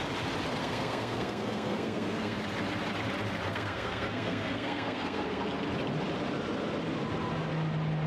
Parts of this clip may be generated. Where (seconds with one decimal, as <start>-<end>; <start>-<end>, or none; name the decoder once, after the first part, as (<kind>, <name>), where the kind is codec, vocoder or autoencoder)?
0.6-2.4 (codec, SNAC); 3.5-5.4

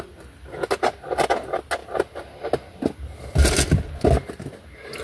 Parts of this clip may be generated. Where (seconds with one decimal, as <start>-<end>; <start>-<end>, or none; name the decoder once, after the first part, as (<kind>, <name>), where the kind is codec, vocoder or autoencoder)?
none

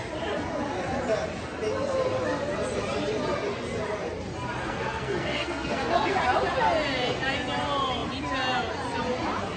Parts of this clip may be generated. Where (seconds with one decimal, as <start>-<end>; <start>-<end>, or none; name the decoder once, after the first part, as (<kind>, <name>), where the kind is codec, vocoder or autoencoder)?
4.6-6.2 (codec, SNAC)

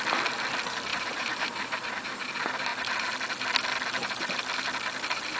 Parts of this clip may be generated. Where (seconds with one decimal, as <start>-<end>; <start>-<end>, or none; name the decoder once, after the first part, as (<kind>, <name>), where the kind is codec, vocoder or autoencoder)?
0.9-2.2 (vocoder, BigVGAN v2)

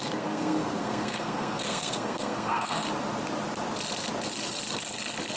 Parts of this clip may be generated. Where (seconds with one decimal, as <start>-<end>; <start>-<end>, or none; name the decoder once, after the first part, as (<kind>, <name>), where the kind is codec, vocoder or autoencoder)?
0.0-2.9 (codec, SNAC)

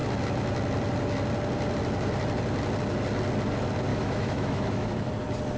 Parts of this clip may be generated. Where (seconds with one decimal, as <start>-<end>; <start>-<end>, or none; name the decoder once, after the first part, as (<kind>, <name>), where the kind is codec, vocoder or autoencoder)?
3.9-5.1 (autoencoder, DAC-VAE)